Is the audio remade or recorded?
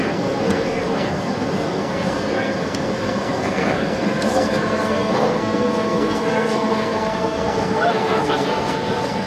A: remade